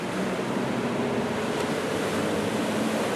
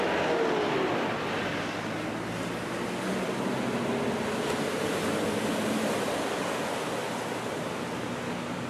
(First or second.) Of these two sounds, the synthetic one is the first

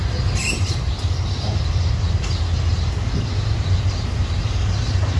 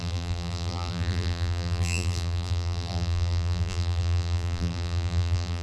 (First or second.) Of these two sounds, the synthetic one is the second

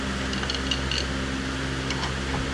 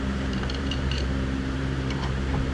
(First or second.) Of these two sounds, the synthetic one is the second